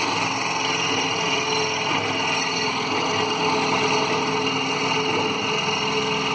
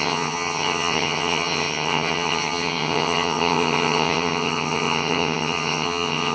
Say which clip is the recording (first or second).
first